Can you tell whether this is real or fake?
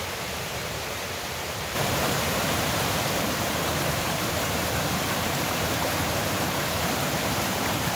fake